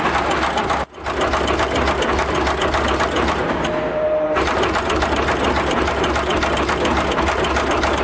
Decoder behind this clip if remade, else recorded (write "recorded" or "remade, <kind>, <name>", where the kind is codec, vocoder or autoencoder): recorded